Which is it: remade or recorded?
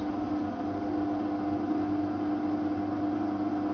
recorded